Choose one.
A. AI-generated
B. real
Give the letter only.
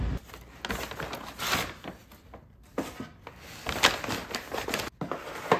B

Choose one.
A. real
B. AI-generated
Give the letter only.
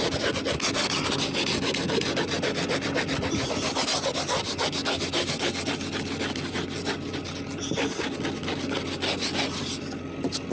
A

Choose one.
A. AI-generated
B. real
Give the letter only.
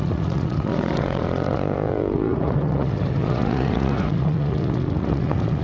A